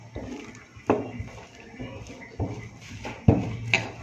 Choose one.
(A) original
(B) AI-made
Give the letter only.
A